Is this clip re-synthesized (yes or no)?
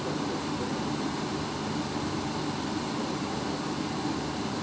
no